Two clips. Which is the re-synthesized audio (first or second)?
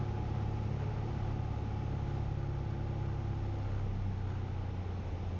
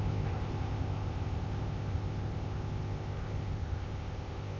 second